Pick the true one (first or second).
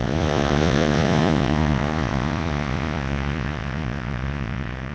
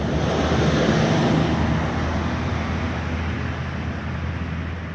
second